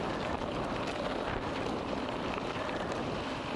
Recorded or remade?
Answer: remade